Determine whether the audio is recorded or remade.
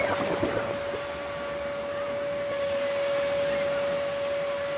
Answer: recorded